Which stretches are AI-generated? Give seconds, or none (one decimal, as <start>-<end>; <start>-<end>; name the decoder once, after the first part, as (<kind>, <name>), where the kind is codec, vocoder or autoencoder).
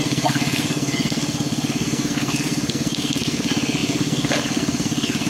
0.0-5.3 (codec, SNAC)